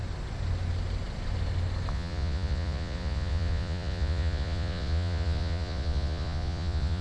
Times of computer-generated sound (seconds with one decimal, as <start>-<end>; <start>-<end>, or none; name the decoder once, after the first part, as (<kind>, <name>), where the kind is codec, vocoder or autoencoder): 1.9-7.0 (vocoder, Vocos)